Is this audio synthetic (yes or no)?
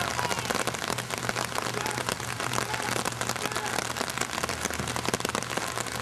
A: no